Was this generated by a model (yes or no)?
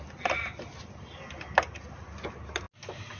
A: no